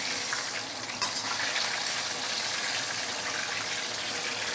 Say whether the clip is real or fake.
real